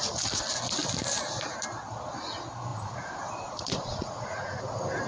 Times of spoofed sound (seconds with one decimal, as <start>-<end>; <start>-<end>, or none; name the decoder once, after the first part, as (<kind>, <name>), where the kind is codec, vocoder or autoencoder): 2.7-4.6 (vocoder, Vocos)